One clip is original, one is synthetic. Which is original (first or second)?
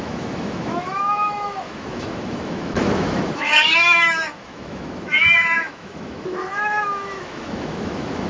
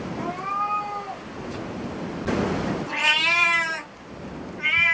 second